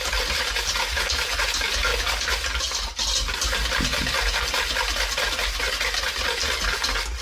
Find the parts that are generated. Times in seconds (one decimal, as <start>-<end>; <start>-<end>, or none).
none